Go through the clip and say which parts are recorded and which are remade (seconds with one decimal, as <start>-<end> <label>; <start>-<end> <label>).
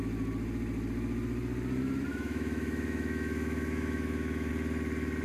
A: 0.0-2.1 recorded; 2.1-4.5 remade; 4.5-5.2 recorded